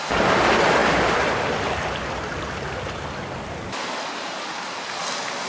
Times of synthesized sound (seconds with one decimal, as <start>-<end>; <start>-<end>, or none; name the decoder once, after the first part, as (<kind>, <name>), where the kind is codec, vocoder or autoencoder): none